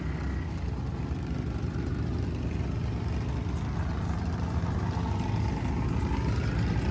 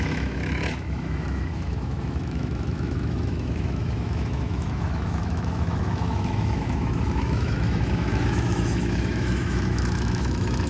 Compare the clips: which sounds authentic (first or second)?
first